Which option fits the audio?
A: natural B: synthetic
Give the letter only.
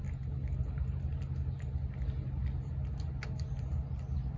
A